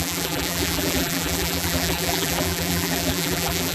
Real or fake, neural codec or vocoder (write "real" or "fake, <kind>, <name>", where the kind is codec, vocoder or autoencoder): fake, vocoder, BigVGAN v2